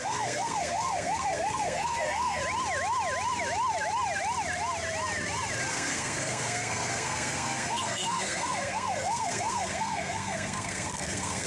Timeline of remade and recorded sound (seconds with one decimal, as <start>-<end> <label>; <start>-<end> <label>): 0.0-2.4 remade; 2.4-5.7 recorded; 5.7-11.5 remade